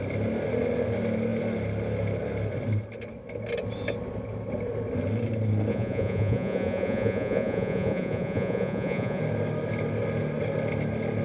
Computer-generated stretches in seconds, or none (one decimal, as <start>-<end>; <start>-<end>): 5.7-9.2